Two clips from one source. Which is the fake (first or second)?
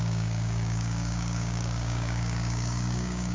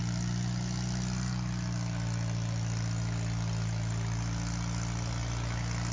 first